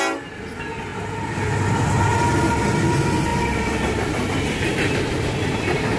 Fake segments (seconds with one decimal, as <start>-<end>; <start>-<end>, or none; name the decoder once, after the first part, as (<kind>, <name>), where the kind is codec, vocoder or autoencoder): none